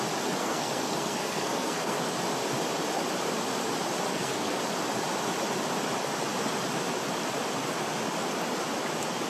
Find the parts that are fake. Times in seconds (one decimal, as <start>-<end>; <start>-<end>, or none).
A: 0.4-2.2; 4.1-4.6